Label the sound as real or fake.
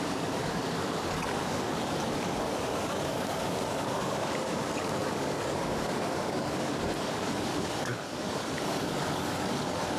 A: fake